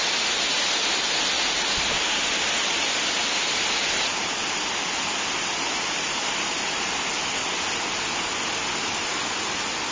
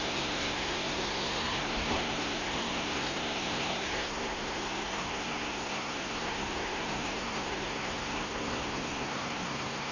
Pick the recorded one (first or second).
first